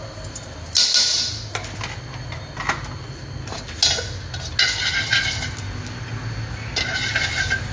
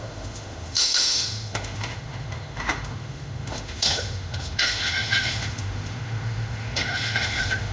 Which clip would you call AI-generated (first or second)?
second